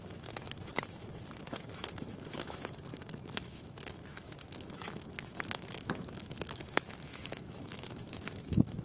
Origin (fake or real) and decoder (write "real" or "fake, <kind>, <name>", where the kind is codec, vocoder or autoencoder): fake, autoencoder, DAC-VAE